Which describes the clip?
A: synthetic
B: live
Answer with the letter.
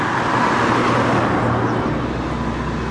B